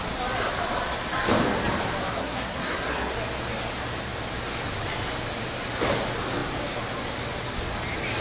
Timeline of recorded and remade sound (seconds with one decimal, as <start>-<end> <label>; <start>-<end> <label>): 0.0-2.2 recorded; 2.2-3.1 remade; 3.1-8.2 recorded